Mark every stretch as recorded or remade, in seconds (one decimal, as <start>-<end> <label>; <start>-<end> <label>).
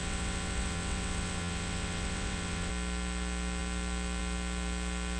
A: 0.0-2.7 remade; 2.7-5.2 recorded